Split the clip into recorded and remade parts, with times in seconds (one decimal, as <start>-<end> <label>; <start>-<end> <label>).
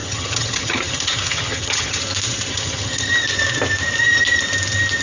0.0-2.0 remade; 2.0-2.5 recorded; 2.5-3.1 remade; 3.1-5.0 recorded